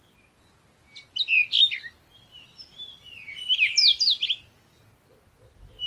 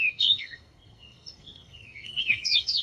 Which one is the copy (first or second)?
second